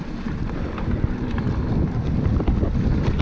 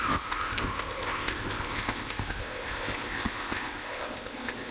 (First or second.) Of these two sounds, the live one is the first